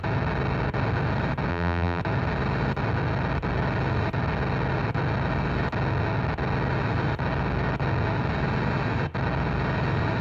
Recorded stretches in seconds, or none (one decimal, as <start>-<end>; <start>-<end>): 0.0-1.5; 2.0-10.2